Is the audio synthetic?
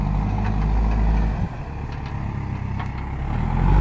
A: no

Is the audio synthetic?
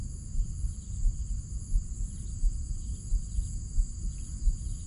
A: no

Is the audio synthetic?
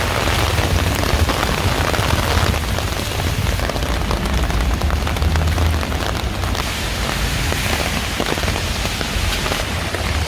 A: no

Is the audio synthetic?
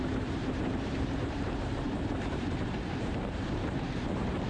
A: yes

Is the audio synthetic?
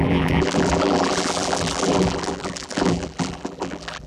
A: yes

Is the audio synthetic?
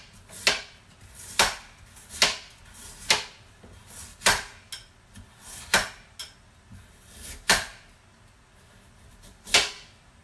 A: no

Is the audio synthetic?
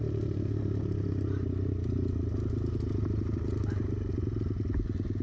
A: no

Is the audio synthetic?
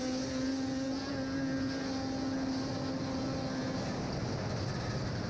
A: no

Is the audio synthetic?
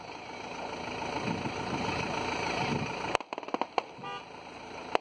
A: no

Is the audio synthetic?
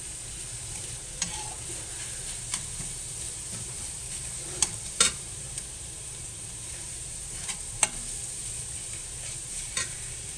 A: yes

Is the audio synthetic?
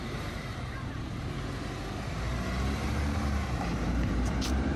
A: yes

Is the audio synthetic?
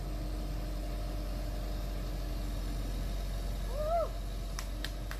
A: no